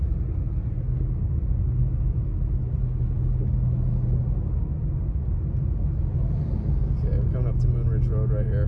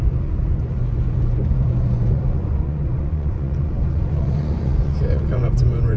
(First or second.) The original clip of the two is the first